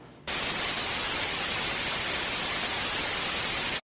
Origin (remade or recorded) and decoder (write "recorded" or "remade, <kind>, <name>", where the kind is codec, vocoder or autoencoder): recorded